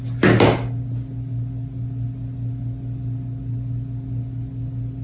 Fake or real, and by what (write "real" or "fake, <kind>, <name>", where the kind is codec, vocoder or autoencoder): real